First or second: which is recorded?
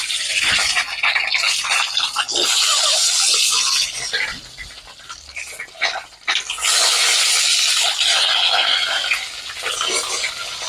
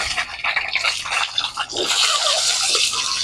first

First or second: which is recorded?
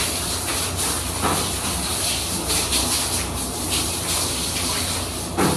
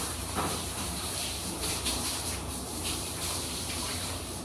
first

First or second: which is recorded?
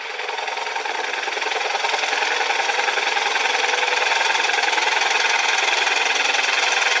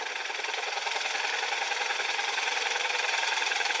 first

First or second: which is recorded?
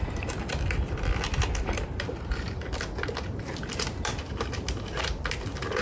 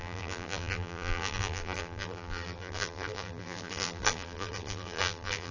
first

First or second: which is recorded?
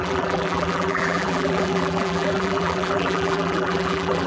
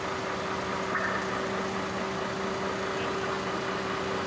second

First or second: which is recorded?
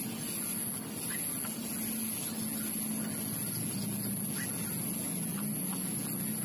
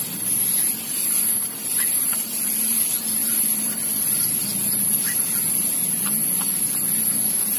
first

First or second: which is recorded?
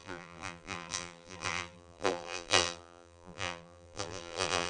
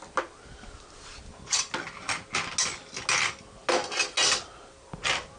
second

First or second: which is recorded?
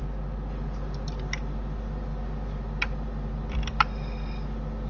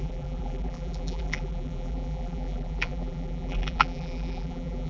first